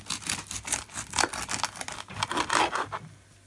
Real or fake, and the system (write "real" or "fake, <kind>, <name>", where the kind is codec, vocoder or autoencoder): real